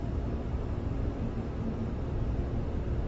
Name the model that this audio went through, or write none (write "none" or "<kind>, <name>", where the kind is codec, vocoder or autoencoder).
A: none